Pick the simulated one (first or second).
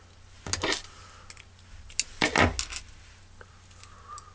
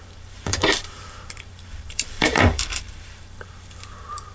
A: second